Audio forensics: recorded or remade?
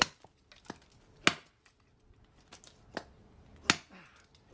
recorded